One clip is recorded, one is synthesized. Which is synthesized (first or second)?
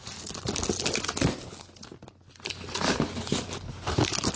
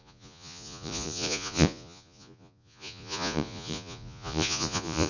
second